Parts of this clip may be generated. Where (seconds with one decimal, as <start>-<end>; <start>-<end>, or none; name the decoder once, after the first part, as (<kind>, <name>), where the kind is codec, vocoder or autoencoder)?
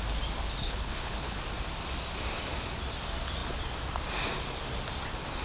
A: 0.6-1.4 (codec, HILCodec)